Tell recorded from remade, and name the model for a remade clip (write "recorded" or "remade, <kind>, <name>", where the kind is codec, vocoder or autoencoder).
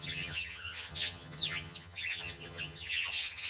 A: remade, vocoder, HiFi-GAN